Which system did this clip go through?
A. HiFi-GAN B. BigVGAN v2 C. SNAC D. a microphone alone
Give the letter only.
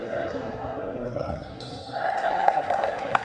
C